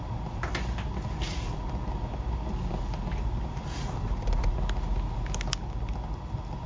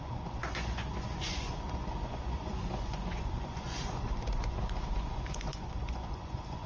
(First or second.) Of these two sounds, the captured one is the first